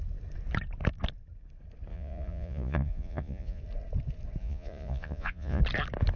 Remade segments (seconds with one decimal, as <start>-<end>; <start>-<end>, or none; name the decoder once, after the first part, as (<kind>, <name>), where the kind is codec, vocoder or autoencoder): 1.9-3.6 (vocoder, Vocos); 4.4-5.6